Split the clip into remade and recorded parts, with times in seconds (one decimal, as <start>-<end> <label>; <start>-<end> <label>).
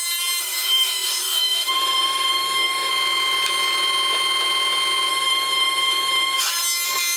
0.0-0.4 recorded; 0.4-2.9 remade; 2.9-5.1 recorded; 5.1-6.5 remade; 6.5-7.2 recorded